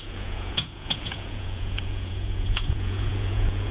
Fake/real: fake